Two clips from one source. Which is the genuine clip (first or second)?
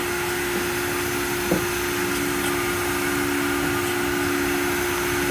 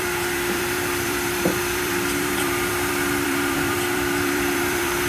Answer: first